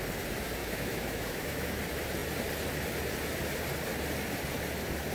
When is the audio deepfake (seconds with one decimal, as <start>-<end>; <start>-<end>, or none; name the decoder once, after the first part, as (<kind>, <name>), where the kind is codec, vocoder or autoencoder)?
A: 0.6-1.8 (autoencoder, DAC-VAE)